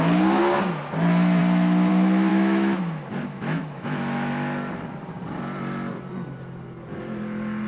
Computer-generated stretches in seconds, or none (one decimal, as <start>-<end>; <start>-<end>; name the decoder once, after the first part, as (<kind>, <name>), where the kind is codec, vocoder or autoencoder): 2.3-2.8 (autoencoder, DAC-VAE); 3.3-4.3